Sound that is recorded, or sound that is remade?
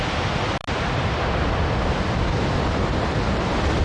recorded